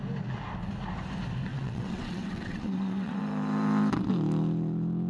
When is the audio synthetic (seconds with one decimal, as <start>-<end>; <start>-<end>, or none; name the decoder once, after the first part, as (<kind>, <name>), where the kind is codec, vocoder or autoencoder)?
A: 1.5-3.2 (vocoder, WaveNeXt)